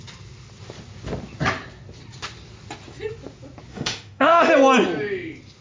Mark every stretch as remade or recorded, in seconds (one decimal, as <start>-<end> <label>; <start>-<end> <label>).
0.0-3.7 recorded; 3.7-4.5 remade; 4.5-5.6 recorded